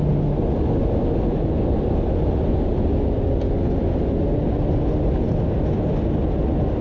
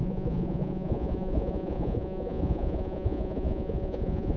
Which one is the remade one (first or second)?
second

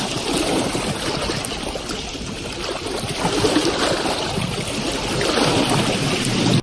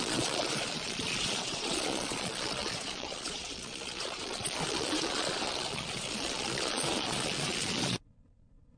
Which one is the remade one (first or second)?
second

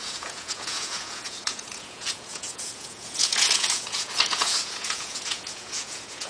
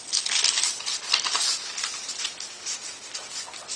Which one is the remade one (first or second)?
first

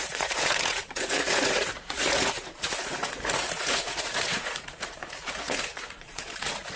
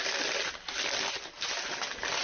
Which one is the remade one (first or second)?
first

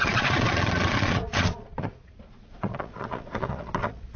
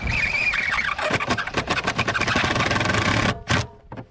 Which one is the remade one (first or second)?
first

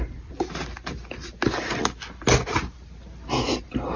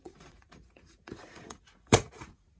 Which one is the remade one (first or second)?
second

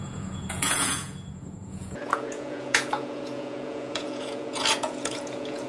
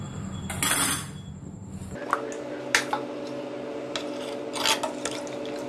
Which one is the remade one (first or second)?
first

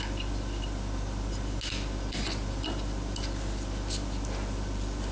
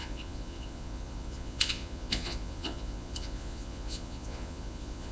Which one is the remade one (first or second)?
second